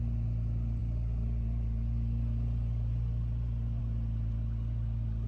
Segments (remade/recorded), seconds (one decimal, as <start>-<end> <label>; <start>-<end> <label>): 0.0-5.3 recorded